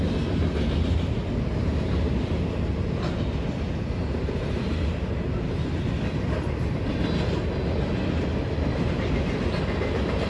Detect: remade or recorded recorded